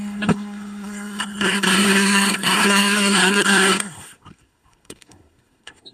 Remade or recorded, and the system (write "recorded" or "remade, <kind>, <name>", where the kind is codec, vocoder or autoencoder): remade, codec, SNAC